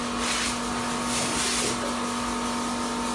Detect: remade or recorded recorded